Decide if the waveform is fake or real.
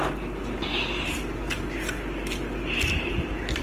real